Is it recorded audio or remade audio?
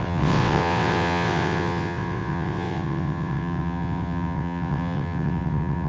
remade